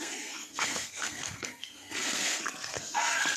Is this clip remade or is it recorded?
remade